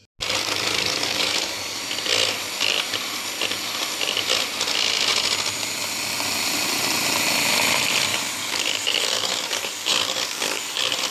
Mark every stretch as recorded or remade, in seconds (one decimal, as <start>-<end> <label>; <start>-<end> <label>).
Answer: 0.0-0.4 recorded; 0.4-1.8 remade; 1.8-8.1 recorded; 8.1-10.6 remade; 10.6-11.1 recorded